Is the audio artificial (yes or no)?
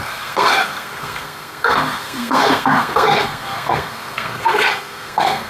yes